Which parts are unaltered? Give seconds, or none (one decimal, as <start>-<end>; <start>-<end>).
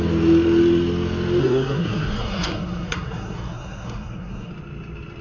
0.0-1.4; 4.5-5.2